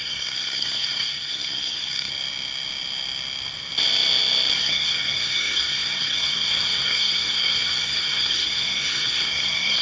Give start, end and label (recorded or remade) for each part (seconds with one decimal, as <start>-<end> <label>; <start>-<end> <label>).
0.0-2.1 remade; 2.1-4.6 recorded; 4.6-9.8 remade